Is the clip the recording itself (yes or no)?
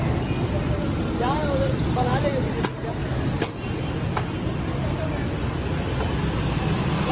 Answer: yes